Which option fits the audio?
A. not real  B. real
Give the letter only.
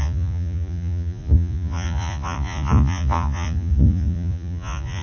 A